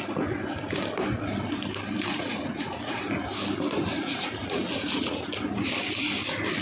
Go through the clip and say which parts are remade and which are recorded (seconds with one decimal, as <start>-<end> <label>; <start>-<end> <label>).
0.0-2.1 recorded; 2.1-3.0 remade; 3.0-3.9 recorded; 3.9-5.2 remade; 5.2-6.6 recorded